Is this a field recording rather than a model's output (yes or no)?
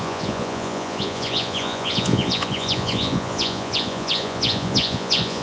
no